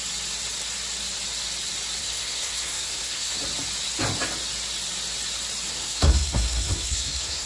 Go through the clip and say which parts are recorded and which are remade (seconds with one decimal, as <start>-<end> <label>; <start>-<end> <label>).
0.0-2.0 recorded; 2.0-3.3 remade; 3.3-5.7 recorded; 5.7-7.5 remade